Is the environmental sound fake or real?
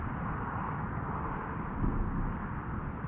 real